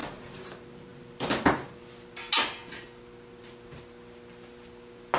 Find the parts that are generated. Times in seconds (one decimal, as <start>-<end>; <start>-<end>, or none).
none